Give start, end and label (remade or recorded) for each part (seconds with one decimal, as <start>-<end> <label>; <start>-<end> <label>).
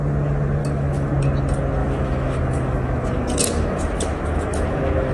0.0-0.6 recorded; 0.6-1.1 remade; 1.1-1.8 recorded; 1.8-5.1 remade